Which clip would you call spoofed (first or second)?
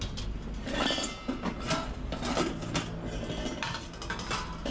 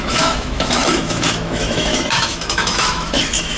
second